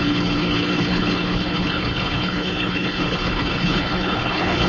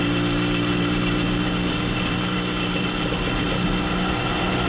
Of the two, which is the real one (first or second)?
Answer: second